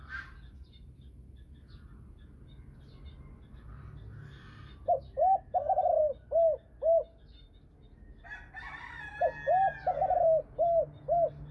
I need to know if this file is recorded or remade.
recorded